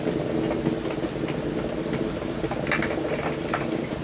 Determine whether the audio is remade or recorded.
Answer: recorded